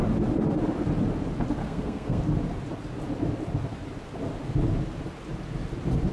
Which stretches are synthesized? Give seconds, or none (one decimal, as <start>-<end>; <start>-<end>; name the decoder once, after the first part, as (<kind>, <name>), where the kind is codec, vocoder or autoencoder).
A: 1.6-2.2 (codec, SNAC)